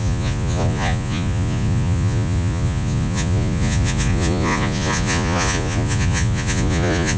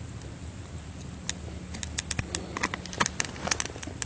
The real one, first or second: second